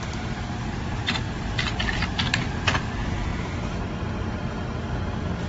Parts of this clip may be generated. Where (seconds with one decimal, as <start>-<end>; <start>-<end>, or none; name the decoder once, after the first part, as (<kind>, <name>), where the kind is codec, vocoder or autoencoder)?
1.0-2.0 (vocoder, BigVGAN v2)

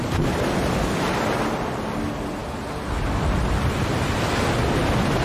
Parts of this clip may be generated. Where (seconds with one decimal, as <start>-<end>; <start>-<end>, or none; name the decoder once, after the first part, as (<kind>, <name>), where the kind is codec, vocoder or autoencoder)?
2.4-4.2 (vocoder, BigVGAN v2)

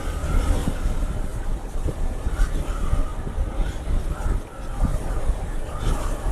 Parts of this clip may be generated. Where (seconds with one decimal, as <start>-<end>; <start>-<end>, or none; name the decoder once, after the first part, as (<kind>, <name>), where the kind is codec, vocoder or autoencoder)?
1.3-2.3 (vocoder, BigVGAN v2); 3.1-4.0; 4.9-5.8

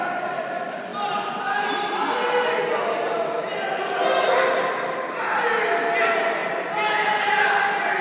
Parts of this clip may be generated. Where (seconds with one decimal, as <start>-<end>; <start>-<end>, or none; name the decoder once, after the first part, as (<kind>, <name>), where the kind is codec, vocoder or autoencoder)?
none

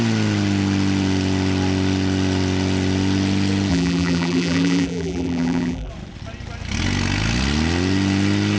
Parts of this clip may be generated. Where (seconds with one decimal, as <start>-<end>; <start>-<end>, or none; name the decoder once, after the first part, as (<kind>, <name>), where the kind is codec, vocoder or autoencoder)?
3.7-5.9 (vocoder, BigVGAN v2)

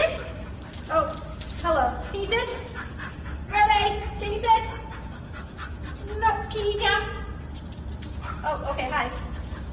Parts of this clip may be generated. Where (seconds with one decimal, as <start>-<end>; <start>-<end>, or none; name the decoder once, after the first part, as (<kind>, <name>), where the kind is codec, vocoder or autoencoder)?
0.0-0.9 (vocoder, BigVGAN v2)

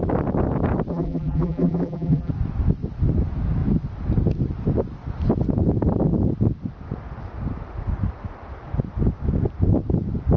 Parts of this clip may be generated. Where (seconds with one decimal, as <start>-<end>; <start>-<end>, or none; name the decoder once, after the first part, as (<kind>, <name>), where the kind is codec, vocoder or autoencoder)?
0.9-2.3 (vocoder, BigVGAN v2)